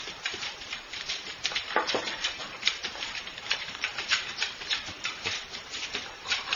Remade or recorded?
remade